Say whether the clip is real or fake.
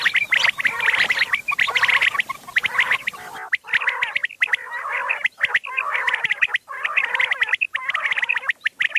real